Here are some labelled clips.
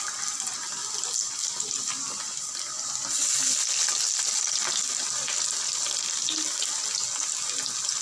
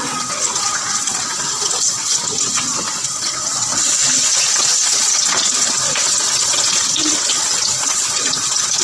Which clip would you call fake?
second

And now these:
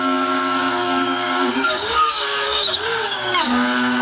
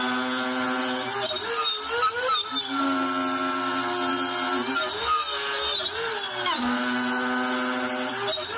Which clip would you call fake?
first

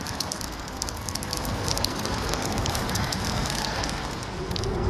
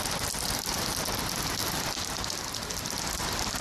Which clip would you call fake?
first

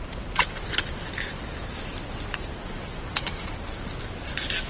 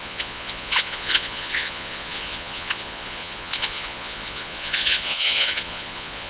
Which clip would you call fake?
second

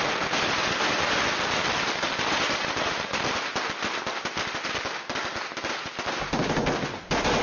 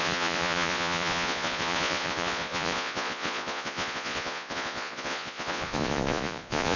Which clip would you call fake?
second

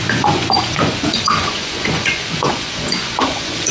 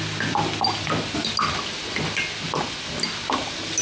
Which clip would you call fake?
first